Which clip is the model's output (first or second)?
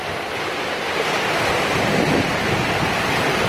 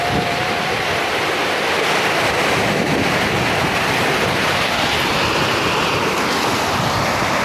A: first